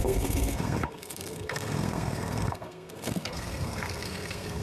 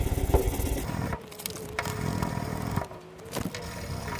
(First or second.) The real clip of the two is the second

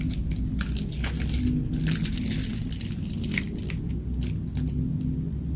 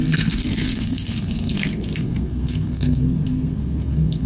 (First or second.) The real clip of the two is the first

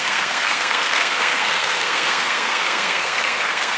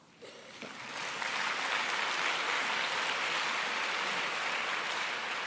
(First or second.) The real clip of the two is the second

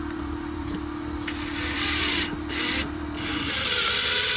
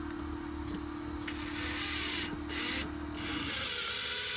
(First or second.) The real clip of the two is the second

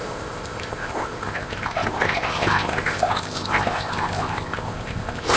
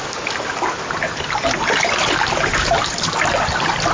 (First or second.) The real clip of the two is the second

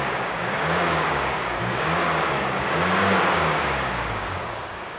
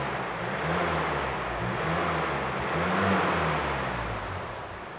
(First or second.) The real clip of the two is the second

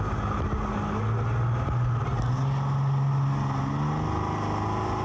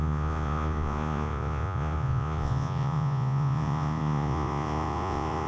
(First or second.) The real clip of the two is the first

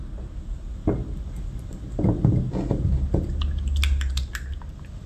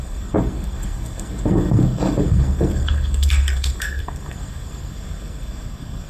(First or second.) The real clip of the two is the first